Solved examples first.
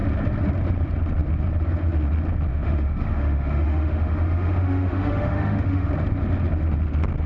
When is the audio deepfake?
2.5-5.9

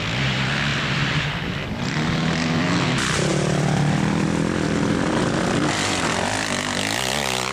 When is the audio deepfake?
none

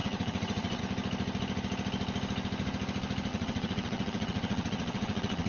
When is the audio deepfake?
0.0-0.8; 3.3-5.5

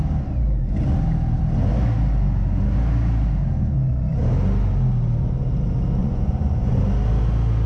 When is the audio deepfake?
6.0-6.8

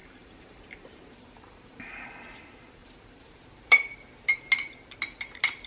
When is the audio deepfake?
0.0-1.9; 2.8-3.7